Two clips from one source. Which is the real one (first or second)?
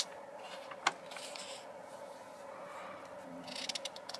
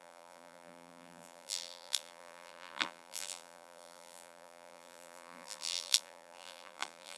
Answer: first